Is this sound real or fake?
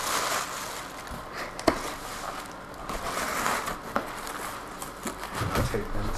real